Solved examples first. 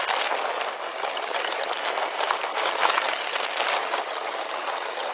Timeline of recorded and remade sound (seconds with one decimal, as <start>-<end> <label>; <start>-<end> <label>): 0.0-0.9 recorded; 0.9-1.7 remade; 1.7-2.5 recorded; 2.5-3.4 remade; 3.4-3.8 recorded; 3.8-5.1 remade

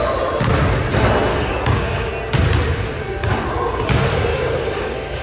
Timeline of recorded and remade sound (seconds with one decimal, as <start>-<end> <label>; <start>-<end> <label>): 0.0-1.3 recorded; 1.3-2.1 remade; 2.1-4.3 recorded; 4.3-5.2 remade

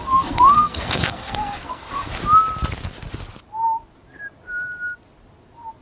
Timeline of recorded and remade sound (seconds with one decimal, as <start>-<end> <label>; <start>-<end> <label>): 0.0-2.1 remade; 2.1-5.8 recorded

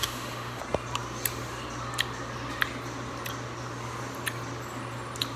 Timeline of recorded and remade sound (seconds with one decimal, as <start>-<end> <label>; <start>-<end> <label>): 0.0-0.6 remade; 0.6-5.4 recorded

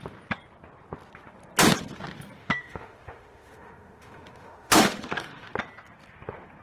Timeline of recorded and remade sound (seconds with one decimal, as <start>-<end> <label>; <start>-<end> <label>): 0.0-2.4 recorded; 2.4-5.5 remade; 5.5-6.6 recorded

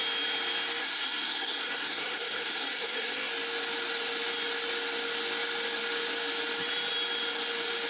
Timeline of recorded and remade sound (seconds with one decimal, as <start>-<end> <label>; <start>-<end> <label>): 0.0-0.8 recorded; 0.8-3.3 remade; 3.3-7.9 recorded

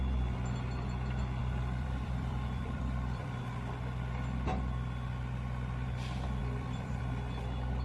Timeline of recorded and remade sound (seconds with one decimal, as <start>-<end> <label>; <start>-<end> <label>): 0.0-1.4 recorded; 1.4-3.4 remade; 3.4-6.4 recorded; 6.4-7.0 remade; 7.0-7.8 recorded

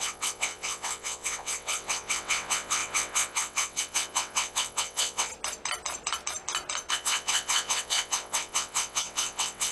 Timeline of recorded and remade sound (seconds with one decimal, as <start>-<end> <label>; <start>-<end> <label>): 0.0-5.3 remade; 5.3-6.9 recorded; 6.9-9.7 remade